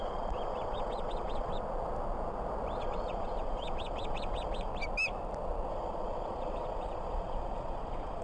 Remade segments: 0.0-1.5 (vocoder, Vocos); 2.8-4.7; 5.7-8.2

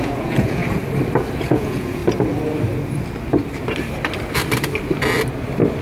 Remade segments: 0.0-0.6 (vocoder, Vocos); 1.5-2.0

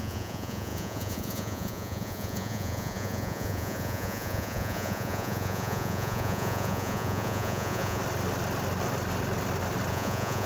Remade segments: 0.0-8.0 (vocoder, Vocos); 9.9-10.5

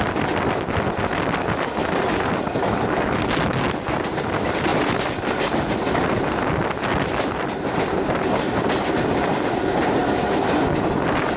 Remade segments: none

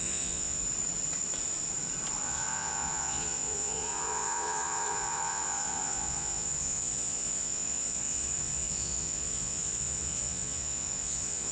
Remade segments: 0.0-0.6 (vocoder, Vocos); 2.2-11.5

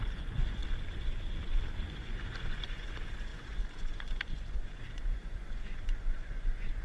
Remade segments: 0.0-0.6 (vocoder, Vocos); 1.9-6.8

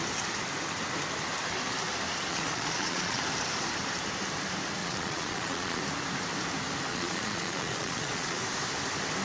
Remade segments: 2.3-3.2 (vocoder, Vocos); 4.8-5.8; 6.9-8.4

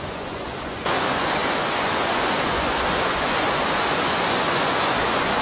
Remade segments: 0.0-5.4 (vocoder, Vocos)